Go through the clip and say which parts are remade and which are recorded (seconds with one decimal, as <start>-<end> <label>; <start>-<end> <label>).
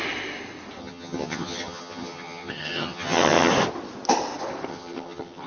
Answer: 0.0-0.8 recorded; 0.8-3.5 remade; 3.5-4.7 recorded; 4.7-5.5 remade